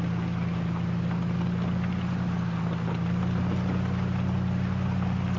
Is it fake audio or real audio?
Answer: real